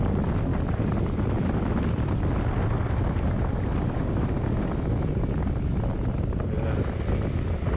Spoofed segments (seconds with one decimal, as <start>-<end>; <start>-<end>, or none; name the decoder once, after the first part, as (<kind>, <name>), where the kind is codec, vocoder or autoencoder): none